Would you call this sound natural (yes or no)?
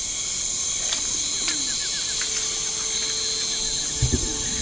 yes